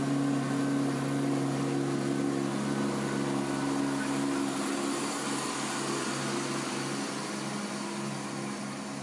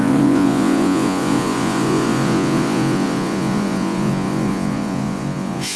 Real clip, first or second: first